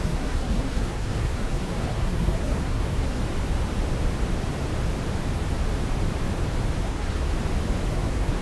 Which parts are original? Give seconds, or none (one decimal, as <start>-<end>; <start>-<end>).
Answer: 3.2-6.8; 7.3-7.9